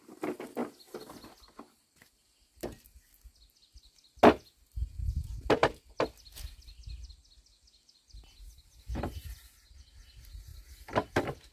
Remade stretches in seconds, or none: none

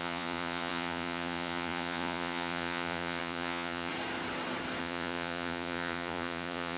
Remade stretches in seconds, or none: 0.0-3.9 (vocoder, Vocos); 4.8-6.8

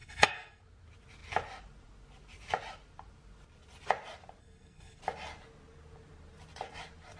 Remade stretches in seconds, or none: 0.0-0.6 (codec, SNAC); 4.4-5.0

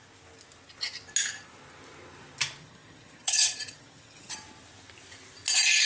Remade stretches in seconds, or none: 2.6-4.3 (vocoder, HiFi-GAN)

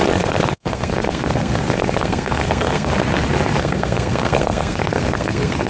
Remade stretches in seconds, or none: 0.0-2.9 (codec, SNAC); 3.6-5.7

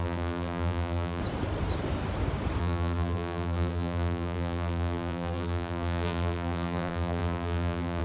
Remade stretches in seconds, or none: 0.0-1.2 (vocoder, BigVGAN v2); 2.6-8.0

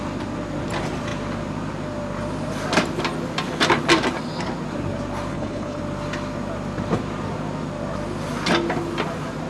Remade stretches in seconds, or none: 5.3-5.8 (codec, HILCodec)

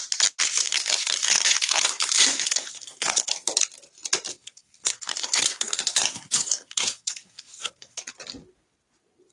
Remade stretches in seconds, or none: 0.4-3.3 (codec, SNAC); 4.3-8.0